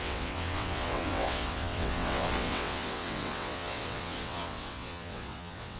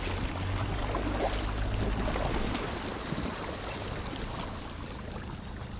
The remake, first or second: first